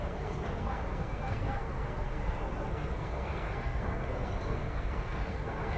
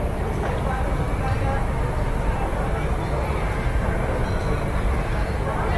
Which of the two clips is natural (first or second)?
second